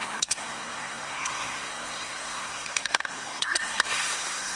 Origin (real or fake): fake